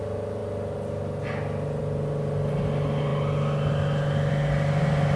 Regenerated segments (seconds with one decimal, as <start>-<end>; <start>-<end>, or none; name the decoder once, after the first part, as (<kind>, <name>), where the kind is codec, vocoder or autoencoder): none